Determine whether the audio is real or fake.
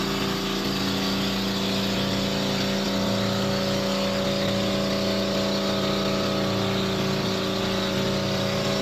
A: real